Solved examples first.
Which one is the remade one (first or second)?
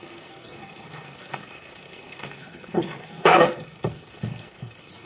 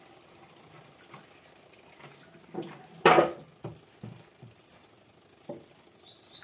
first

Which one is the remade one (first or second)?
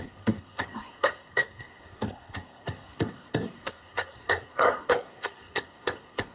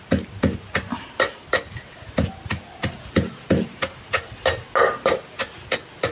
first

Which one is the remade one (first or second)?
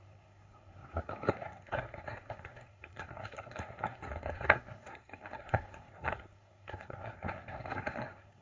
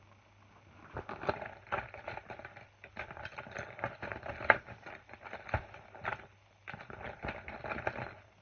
first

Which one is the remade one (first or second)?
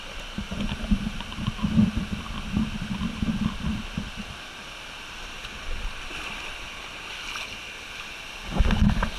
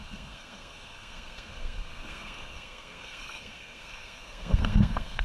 second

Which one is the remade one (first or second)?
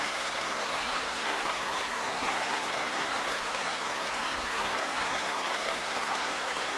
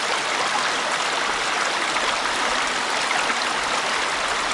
first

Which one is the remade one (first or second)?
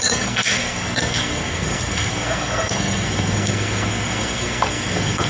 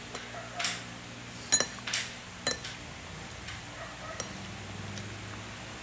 first